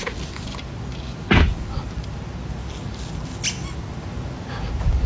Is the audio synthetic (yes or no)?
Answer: no